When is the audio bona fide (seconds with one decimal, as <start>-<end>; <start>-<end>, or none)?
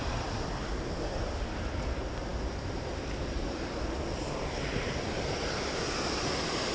0.0-6.7